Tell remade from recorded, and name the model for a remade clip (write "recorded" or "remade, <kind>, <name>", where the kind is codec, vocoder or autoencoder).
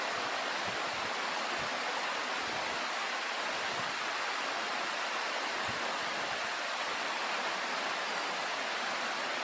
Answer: recorded